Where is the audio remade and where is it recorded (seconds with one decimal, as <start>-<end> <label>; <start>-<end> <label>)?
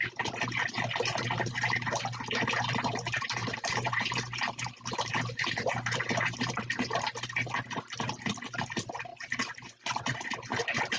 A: 0.0-3.4 recorded; 3.4-6.6 remade; 6.6-9.1 recorded; 9.1-11.0 remade